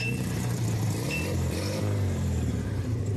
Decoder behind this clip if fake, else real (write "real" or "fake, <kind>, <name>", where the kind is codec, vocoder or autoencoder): fake, vocoder, BigVGAN v2